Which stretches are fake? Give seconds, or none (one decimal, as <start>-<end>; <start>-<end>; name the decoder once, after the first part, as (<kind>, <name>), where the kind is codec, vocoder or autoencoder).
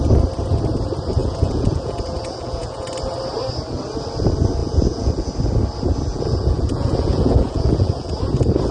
1.2-2.8 (vocoder, Vocos); 4.6-5.3; 6.1-8.1